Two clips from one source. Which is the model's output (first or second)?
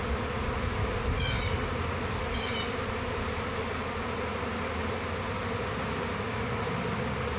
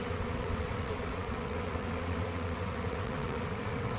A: second